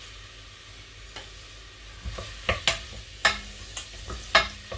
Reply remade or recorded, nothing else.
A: recorded